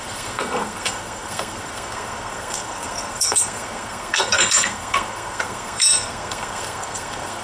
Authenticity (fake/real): fake